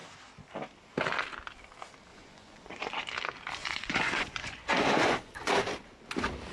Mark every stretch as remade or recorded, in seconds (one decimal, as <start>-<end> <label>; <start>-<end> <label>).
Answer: 0.0-2.1 recorded; 2.1-3.0 remade; 3.0-3.6 recorded; 3.6-5.5 remade; 5.5-6.5 recorded